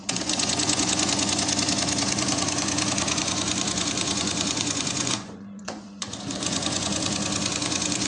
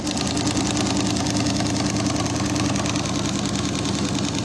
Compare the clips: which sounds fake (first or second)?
first